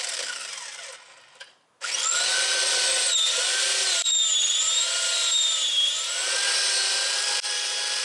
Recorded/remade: recorded